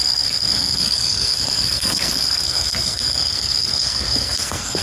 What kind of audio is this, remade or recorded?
remade